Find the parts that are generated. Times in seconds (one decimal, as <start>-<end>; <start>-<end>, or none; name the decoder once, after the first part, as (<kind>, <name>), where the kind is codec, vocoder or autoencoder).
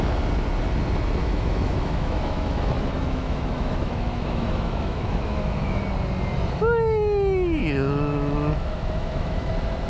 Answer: 1.2-5.8 (autoencoder, DAC-VAE); 7.6-9.5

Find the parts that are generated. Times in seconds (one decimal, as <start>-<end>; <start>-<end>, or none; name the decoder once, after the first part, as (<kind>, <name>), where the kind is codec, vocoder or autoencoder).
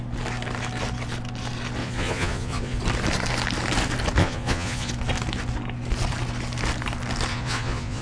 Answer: 1.8-2.8 (vocoder, Vocos); 4.2-4.9; 7.3-8.0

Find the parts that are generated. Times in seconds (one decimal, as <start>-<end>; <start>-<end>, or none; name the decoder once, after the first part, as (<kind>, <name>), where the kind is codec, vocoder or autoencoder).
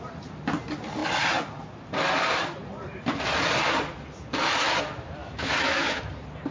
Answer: 5.2-6.0 (autoencoder, DAC-VAE)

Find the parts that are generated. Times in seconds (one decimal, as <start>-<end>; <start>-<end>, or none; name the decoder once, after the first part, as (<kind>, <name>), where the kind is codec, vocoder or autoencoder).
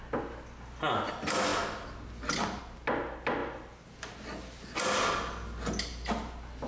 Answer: none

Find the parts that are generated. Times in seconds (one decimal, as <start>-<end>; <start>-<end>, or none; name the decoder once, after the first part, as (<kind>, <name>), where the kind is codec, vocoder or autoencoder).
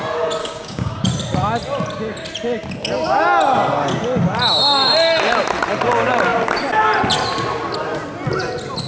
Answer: 0.4-1.0 (codec, DAC)